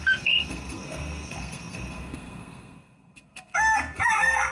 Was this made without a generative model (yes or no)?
no